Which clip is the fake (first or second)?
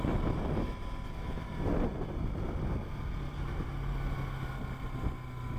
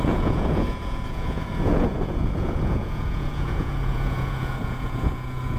second